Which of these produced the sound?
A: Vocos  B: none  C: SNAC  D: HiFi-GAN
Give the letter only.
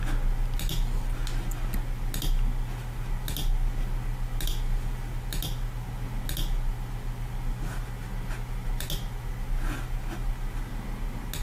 B